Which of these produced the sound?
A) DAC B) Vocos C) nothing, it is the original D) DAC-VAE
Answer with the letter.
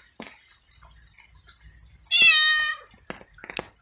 C